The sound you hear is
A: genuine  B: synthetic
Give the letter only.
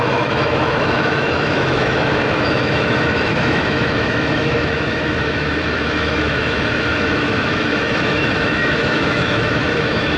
B